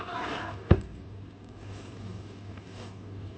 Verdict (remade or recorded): remade